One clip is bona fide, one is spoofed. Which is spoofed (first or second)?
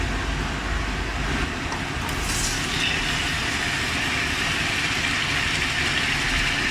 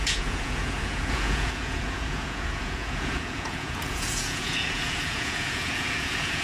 second